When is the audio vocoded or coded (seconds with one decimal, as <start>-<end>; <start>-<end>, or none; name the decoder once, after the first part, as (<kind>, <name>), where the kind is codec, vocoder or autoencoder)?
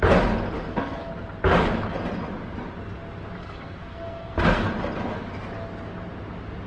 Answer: 0.6-1.1 (codec, SNAC); 3.4-4.7